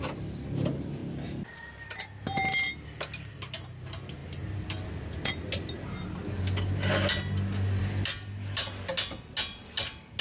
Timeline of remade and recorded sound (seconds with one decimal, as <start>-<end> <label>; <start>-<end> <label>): 0.0-10.2 recorded